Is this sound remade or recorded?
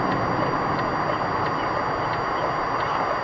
recorded